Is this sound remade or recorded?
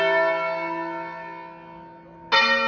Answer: recorded